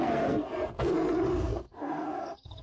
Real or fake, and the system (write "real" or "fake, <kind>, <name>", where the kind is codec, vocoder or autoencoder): fake, codec, SNAC